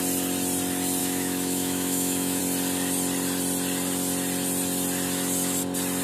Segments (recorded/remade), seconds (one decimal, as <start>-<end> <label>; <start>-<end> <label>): 0.0-1.0 recorded; 1.0-2.4 remade; 2.4-6.0 recorded